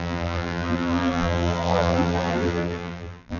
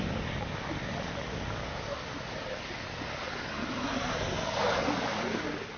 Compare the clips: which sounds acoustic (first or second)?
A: second